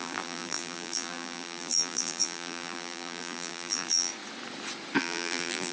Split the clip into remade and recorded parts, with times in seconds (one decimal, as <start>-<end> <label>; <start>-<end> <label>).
0.0-4.1 remade; 4.1-5.0 recorded; 5.0-5.7 remade